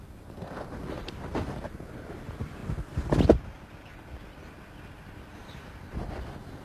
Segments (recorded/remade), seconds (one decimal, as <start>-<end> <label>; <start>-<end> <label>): 0.0-2.6 remade; 2.6-4.0 recorded; 4.0-6.6 remade